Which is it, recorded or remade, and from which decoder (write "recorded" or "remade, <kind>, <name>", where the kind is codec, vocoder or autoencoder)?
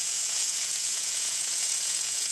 remade, vocoder, Vocos